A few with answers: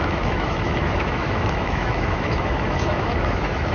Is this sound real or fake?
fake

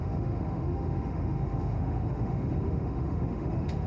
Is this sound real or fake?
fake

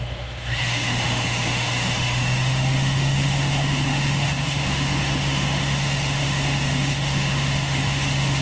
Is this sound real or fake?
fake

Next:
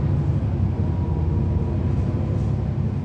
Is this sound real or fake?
real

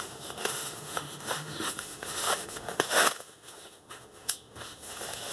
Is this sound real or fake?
fake